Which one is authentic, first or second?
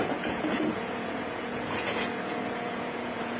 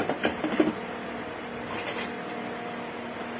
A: second